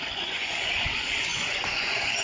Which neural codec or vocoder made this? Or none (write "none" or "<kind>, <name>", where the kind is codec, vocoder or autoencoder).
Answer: vocoder, Vocos